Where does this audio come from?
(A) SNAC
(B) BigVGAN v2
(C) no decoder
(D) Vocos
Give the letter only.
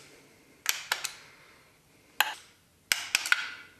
C